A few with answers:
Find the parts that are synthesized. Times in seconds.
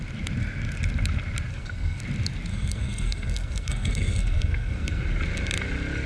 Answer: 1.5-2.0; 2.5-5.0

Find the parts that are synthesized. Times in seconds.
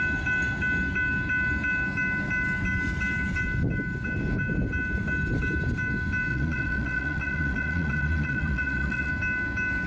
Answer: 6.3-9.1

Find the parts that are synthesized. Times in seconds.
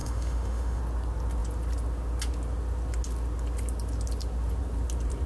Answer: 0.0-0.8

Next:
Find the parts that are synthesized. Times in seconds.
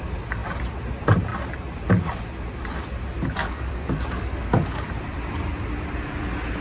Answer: 3.4-4.9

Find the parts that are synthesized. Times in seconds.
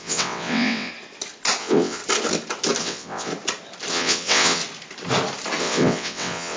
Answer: 0.0-0.9; 1.6-2.0; 2.8-3.3; 3.9-4.6; 5.6-6.6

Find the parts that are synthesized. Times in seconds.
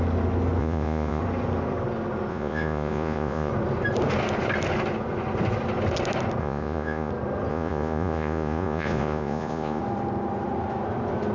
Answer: 0.6-1.2; 2.3-3.5; 6.4-7.1; 7.5-9.8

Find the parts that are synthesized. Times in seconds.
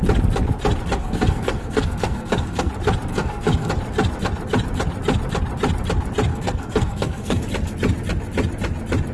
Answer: 1.0-2.7; 3.1-3.7; 6.3-7.4